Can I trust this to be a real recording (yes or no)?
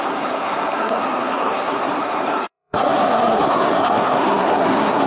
no